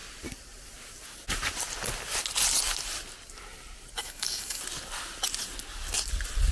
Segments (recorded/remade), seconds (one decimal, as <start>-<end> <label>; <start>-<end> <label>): 0.0-4.0 recorded; 4.0-4.6 remade; 4.6-6.5 recorded